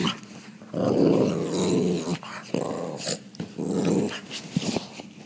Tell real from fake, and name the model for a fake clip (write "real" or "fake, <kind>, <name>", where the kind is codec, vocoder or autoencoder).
real